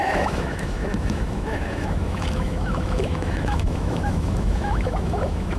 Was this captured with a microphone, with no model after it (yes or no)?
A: no